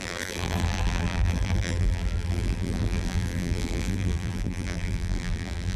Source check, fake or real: fake